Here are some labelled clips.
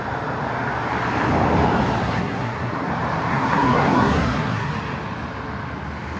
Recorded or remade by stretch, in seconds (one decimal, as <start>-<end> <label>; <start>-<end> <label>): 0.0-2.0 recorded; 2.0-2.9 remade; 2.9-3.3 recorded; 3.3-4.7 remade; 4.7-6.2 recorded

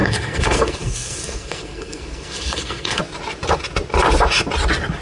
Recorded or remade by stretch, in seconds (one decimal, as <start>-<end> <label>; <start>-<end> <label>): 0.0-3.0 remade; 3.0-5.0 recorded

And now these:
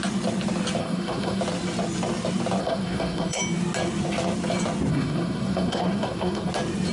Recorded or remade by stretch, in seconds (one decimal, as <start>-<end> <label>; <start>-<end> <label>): 0.0-0.8 recorded; 0.8-1.4 remade; 1.4-2.6 recorded; 2.6-3.4 remade; 3.4-4.9 recorded; 4.9-6.5 remade; 6.5-6.9 recorded

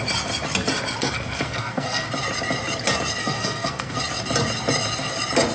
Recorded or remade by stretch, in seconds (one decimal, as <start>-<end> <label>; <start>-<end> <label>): 0.0-1.0 recorded; 1.0-2.1 remade; 2.1-3.2 recorded; 3.2-4.0 remade; 4.0-5.5 recorded

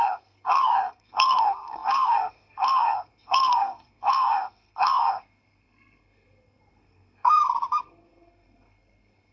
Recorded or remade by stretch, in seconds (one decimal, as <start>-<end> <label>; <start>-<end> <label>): 0.0-9.3 remade